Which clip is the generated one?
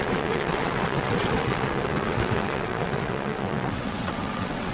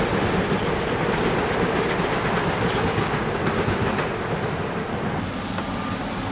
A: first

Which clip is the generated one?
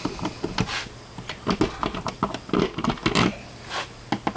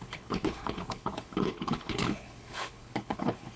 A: second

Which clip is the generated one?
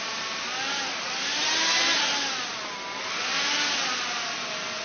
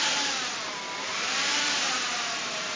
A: second